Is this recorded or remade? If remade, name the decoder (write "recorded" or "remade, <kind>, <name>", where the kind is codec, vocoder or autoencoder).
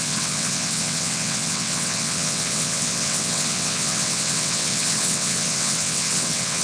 remade, vocoder, WaveNeXt